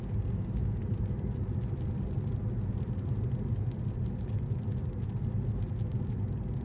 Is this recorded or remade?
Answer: recorded